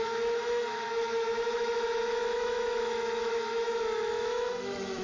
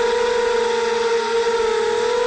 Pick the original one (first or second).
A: second